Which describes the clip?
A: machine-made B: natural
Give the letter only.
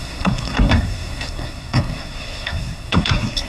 A